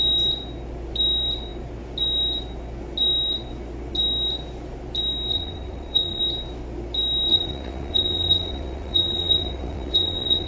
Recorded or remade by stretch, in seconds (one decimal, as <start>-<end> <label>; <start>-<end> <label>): 0.0-5.3 recorded; 5.3-6.2 remade; 6.2-7.3 recorded; 7.3-10.5 remade